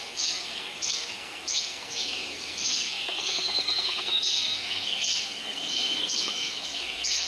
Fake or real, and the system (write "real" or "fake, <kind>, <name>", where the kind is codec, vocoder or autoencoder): fake, codec, SNAC